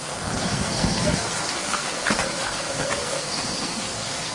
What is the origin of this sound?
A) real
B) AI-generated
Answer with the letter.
B